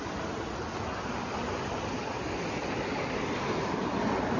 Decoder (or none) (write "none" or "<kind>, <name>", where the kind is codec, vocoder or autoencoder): none